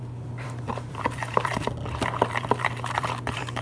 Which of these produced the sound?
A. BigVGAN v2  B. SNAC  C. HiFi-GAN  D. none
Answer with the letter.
A